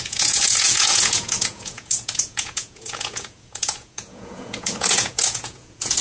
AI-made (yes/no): yes